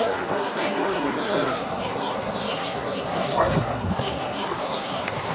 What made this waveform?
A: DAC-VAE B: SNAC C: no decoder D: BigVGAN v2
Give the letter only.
B